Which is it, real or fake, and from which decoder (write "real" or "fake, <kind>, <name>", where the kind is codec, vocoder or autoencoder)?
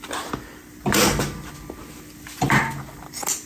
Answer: real